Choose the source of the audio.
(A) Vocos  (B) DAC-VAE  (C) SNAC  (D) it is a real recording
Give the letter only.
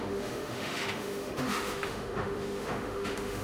B